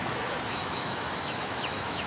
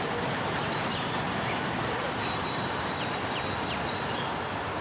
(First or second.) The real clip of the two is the second